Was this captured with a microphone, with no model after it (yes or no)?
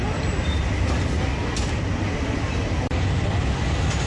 yes